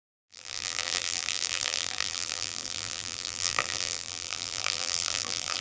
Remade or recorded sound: remade